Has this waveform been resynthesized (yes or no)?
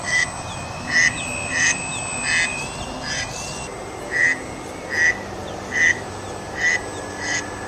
no